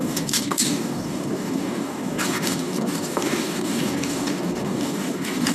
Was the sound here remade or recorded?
remade